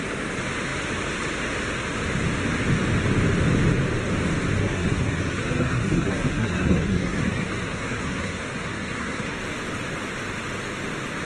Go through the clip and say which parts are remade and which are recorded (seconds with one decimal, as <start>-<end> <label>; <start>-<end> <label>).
0.0-4.6 recorded; 4.6-9.4 remade; 9.4-11.2 recorded

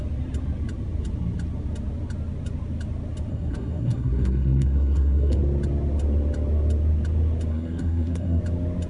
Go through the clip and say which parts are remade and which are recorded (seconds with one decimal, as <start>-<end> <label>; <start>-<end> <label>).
0.0-3.3 recorded; 3.3-5.4 remade; 5.4-7.5 recorded; 7.5-8.4 remade; 8.4-8.9 recorded

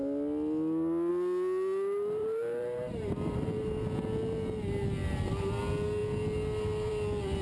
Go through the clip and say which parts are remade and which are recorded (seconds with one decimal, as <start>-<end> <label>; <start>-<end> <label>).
0.0-2.2 recorded; 2.2-3.5 remade; 3.5-7.4 recorded